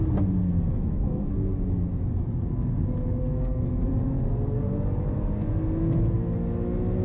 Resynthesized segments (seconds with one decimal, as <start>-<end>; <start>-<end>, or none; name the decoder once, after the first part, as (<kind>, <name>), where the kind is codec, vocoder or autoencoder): 0.4-1.3 (codec, SNAC); 3.2-3.9